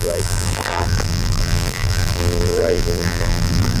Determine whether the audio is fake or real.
fake